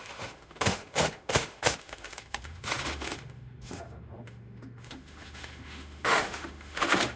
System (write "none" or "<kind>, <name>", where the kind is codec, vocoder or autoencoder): autoencoder, DAC-VAE